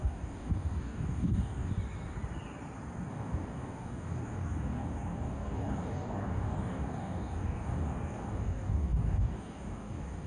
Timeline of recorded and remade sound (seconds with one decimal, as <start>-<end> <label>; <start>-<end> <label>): 0.0-1.7 remade; 1.7-3.1 recorded; 3.1-10.3 remade